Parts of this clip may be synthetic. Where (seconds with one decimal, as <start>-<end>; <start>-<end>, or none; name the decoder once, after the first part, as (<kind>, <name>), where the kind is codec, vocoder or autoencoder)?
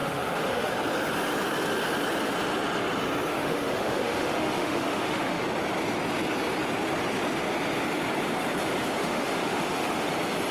0.0-0.7 (autoencoder, DAC-VAE); 3.3-5.4; 9.0-10.1